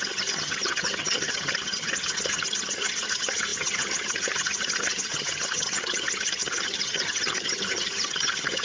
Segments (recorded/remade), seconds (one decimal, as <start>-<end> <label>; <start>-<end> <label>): 0.0-8.6 remade